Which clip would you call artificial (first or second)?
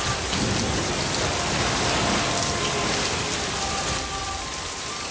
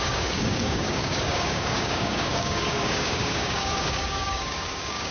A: second